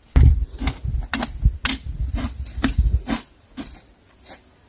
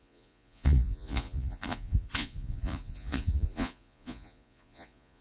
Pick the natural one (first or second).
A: first